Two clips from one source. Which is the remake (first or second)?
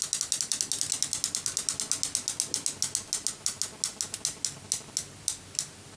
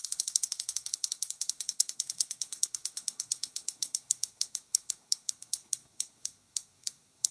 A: second